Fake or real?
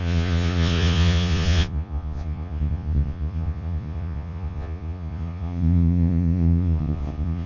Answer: fake